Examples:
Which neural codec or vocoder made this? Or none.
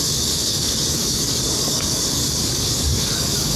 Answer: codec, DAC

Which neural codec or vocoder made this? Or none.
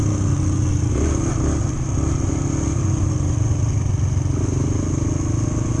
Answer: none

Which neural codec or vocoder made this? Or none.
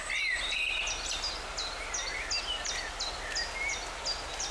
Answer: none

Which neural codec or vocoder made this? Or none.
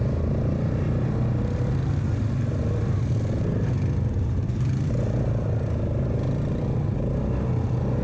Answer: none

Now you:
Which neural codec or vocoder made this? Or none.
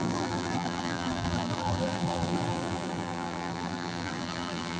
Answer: vocoder, BigVGAN v2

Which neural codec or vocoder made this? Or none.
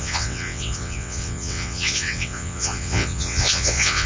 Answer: vocoder, WaveNeXt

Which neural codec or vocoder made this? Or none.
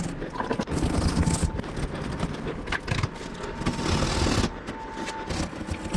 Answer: none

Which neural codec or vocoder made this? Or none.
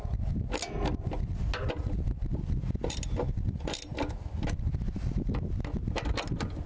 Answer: none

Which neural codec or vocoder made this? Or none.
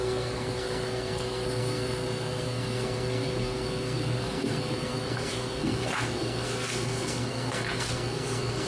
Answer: codec, SNAC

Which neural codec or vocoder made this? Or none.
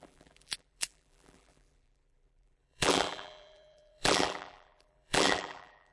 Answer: vocoder, BigVGAN v2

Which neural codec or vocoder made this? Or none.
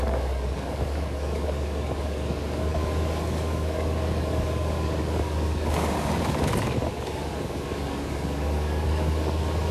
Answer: codec, DAC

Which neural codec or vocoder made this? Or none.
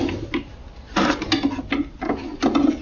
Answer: none